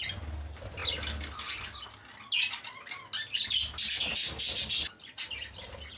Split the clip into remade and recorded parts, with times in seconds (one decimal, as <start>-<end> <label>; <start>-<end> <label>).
0.0-6.0 recorded